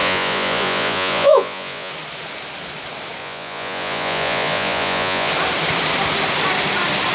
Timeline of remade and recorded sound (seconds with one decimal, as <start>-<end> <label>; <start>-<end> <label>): 0.0-1.9 remade; 1.9-3.2 recorded; 3.2-5.3 remade; 5.3-7.1 recorded